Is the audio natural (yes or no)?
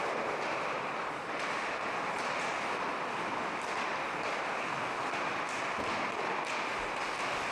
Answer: yes